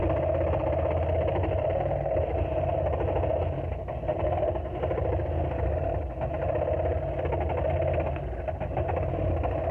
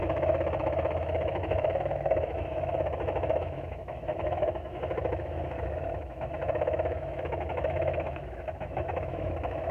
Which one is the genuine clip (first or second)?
first